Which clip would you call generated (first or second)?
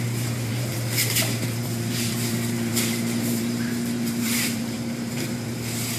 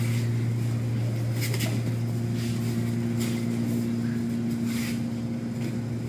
first